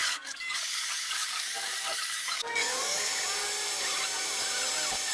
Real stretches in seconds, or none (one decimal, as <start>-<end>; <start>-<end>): 3.1-5.1